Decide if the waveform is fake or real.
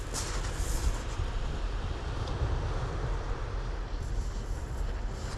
real